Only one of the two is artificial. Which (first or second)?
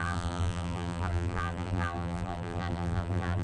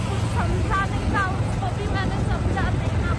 first